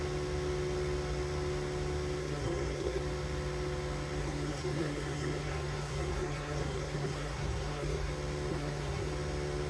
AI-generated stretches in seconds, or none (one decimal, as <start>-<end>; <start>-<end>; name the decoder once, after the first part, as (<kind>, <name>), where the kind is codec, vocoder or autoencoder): 2.2-3.0 (codec, SNAC); 4.2-8.1; 8.5-9.1